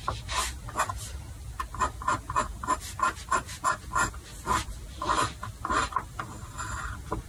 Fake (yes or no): no